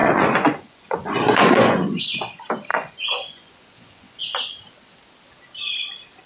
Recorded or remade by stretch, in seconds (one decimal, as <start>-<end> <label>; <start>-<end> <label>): 0.0-2.0 remade; 2.0-2.7 recorded; 2.7-4.2 remade; 4.2-6.3 recorded